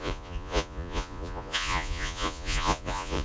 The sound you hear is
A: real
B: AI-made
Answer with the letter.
B